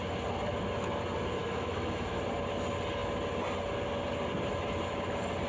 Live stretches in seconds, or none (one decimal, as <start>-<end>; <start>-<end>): 0.0-1.4; 2.2-5.5